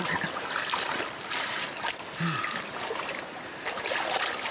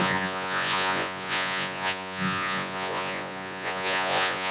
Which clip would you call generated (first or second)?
second